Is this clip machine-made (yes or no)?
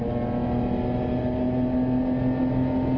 no